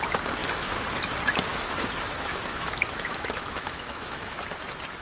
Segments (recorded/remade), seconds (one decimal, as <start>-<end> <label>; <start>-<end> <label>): 0.0-0.4 recorded; 0.4-1.0 remade; 1.0-1.5 recorded; 1.5-4.4 remade; 4.4-5.0 recorded